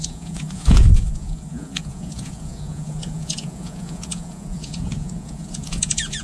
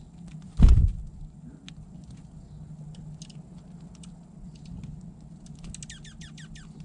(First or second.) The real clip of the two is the second